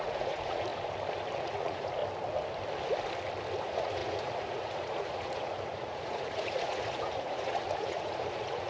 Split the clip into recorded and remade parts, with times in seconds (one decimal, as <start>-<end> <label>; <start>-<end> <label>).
0.0-0.7 remade; 0.7-1.4 recorded; 1.4-2.0 remade; 2.0-3.6 recorded; 3.6-8.7 remade